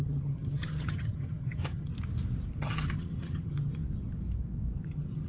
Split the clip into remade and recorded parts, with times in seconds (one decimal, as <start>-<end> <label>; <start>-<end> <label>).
0.0-1.9 remade; 1.9-2.6 recorded; 2.6-3.8 remade; 3.8-4.8 recorded; 4.8-5.3 remade